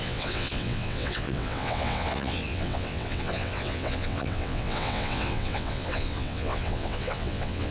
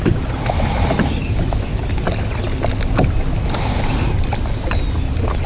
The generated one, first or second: first